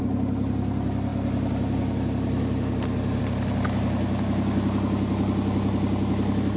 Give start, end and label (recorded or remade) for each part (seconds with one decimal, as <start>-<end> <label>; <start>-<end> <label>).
0.0-6.6 recorded